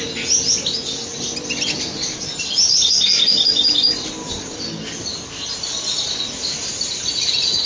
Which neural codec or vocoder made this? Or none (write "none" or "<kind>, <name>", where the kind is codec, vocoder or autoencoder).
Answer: none